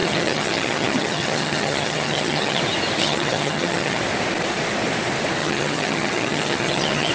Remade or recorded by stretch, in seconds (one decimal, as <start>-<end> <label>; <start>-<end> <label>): 0.0-2.6 remade; 2.6-3.0 recorded; 3.0-4.0 remade; 4.0-5.4 recorded; 5.4-7.1 remade